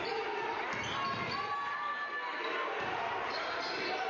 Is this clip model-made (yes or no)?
no